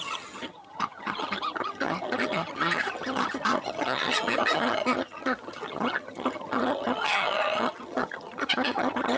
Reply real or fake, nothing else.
fake